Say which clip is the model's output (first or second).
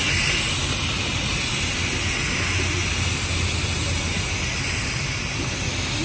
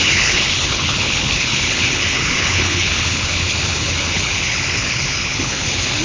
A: second